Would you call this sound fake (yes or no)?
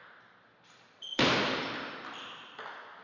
yes